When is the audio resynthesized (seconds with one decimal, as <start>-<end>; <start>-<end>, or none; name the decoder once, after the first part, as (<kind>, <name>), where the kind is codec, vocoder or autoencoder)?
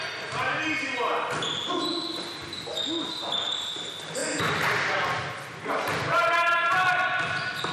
5.9-6.4 (vocoder, BigVGAN v2)